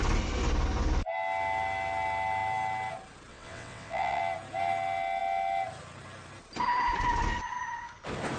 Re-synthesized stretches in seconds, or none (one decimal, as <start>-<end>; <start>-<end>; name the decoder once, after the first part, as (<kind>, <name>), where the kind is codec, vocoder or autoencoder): 3.3-4.2 (vocoder, WaveNeXt)